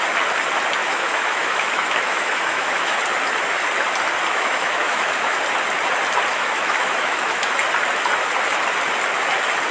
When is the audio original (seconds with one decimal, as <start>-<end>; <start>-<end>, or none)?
0.0-0.8; 3.0-4.3; 5.4-6.3; 7.5-9.7

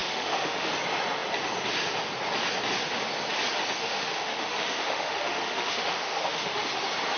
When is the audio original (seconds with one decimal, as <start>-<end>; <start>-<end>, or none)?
0.7-3.8; 6.7-7.2

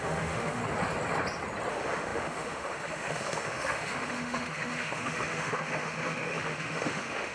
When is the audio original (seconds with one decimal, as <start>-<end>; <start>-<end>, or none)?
0.6-1.7